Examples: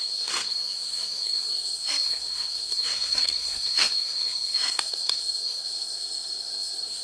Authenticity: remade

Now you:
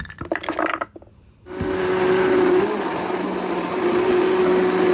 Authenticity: recorded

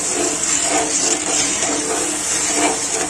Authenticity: recorded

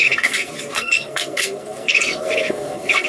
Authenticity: remade